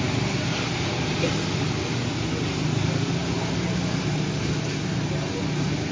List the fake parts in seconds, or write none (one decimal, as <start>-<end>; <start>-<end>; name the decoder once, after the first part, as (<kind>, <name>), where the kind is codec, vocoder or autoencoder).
none